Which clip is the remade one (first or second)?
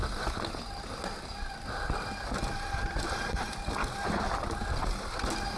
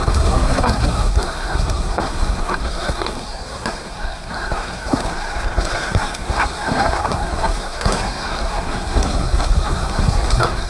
second